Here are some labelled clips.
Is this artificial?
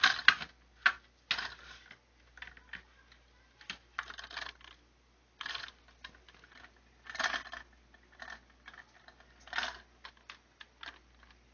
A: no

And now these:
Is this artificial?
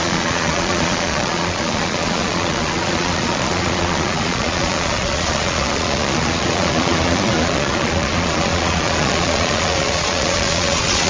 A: yes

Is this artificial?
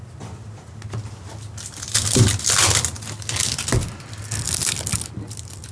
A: no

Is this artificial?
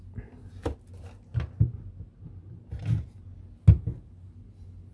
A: no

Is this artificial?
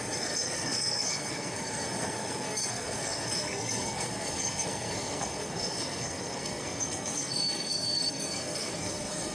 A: yes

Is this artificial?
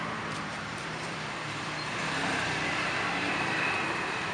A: yes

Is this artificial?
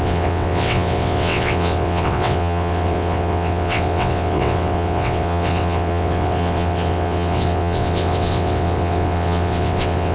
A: yes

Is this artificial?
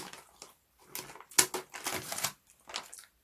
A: no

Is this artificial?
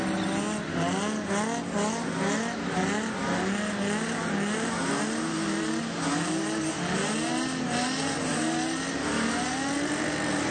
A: no